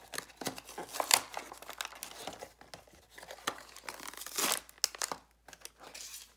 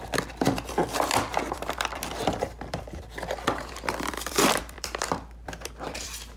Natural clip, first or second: first